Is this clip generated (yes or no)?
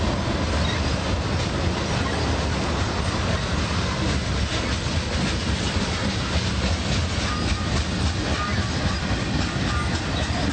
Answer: no